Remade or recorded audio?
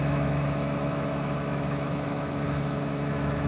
remade